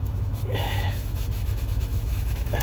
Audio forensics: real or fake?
fake